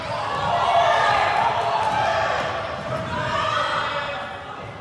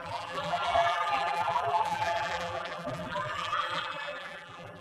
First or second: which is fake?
second